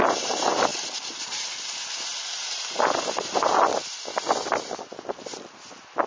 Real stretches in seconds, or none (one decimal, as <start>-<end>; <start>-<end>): 0.0-6.1